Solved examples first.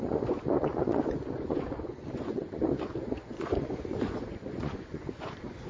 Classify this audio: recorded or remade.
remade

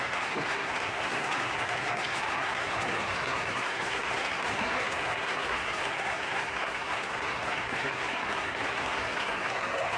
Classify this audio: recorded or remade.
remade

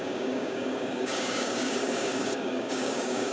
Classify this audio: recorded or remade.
remade